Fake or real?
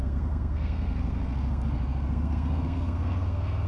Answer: fake